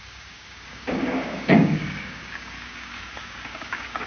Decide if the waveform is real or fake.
fake